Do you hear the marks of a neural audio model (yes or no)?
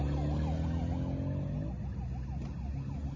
no